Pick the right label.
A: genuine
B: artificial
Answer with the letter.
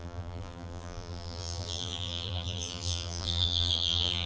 B